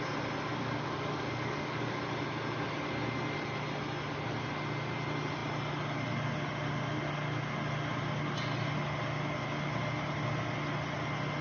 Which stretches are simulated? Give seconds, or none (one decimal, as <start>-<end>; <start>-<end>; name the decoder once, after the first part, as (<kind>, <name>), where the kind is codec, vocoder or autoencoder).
0.5-2.0 (codec, DAC)